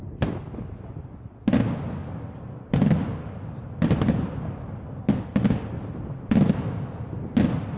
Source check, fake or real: real